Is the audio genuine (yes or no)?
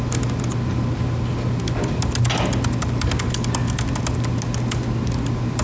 yes